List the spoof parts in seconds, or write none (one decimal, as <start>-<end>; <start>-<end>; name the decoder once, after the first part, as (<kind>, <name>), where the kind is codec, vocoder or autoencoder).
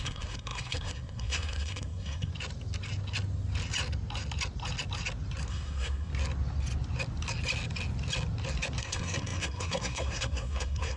0.0-2.3 (codec, SNAC); 5.5-6.1; 8.8-11.0